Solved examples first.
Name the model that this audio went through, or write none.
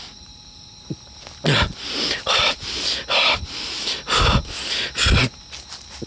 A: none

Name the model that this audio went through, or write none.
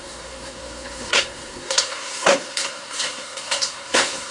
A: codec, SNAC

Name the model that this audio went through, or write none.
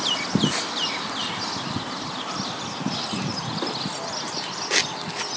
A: none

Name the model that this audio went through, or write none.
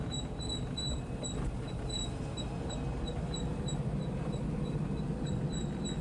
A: none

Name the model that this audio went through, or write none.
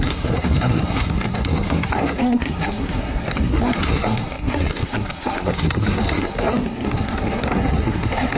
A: codec, SNAC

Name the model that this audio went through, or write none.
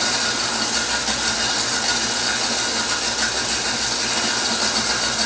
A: none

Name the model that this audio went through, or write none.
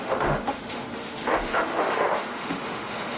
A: autoencoder, DAC-VAE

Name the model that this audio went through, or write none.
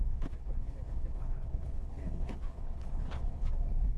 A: codec, HILCodec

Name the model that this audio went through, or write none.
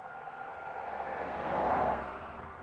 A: codec, SNAC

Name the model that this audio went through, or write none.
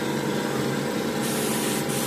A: none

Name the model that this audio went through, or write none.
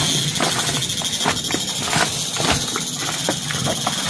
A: none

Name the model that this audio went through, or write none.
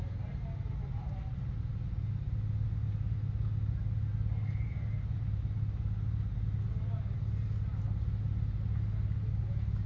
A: none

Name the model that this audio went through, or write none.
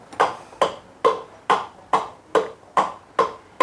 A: none